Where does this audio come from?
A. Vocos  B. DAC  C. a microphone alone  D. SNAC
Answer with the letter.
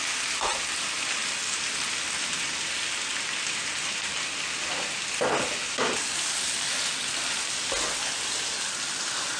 C